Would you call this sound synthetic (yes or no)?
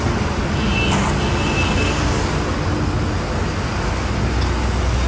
no